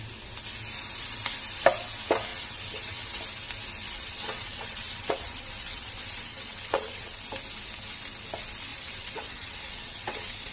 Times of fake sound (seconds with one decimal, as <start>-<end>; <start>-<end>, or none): 2.3-3.2; 3.8-7.2; 8.7-10.5